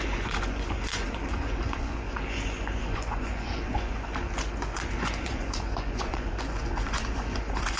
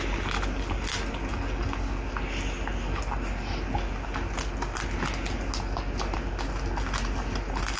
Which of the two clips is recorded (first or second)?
second